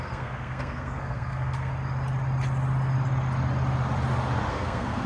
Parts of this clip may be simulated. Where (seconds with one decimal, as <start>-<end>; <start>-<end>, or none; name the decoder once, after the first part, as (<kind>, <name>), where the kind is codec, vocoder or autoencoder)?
0.0-1.7 (codec, SNAC); 4.5-5.1